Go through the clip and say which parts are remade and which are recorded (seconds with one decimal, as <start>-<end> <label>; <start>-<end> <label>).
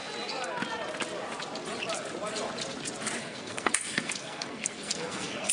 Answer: 0.0-3.2 recorded; 3.2-5.5 remade